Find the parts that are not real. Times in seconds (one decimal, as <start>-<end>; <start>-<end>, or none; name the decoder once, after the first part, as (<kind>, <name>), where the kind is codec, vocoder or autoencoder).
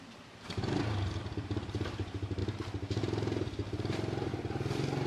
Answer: 0.0-2.4 (vocoder, BigVGAN v2); 3.0-4.3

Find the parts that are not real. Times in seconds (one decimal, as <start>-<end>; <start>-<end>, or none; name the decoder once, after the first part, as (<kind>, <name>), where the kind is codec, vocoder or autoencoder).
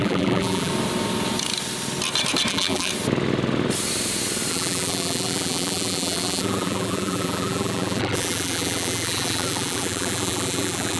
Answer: 0.0-0.7 (vocoder, BigVGAN v2); 2.5-2.9; 4.5-11.0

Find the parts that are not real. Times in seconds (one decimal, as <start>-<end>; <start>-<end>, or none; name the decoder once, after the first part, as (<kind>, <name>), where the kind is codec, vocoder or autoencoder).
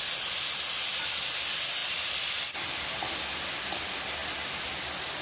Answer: 1.8-3.8 (vocoder, BigVGAN v2)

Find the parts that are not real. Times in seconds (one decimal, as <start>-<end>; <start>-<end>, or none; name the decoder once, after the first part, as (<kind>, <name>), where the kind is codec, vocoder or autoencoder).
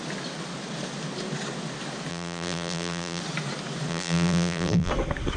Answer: 2.1-3.2 (vocoder, BigVGAN v2); 3.9-4.9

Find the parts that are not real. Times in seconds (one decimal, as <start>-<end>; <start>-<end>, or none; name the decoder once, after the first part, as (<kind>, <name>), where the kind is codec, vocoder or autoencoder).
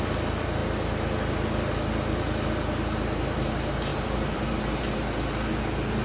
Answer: 3.9-4.8 (vocoder, BigVGAN v2)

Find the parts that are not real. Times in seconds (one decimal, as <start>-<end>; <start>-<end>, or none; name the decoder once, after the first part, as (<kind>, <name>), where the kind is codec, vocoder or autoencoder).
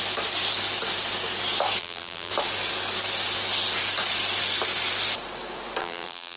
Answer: 1.8-2.3 (vocoder, BigVGAN v2); 5.8-6.4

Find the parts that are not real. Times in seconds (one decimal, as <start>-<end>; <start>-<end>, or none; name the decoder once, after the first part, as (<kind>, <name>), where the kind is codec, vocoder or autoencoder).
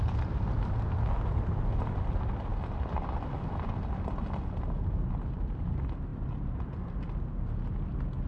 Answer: none